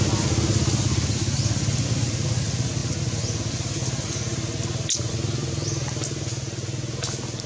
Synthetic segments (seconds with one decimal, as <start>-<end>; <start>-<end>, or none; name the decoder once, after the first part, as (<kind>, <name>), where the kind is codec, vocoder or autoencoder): none